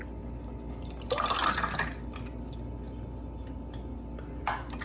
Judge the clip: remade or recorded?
recorded